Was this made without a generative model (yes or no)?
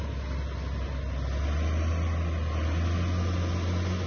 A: yes